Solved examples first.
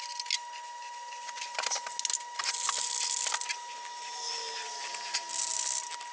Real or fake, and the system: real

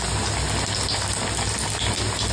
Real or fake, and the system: real